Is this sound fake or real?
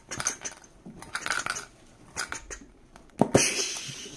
real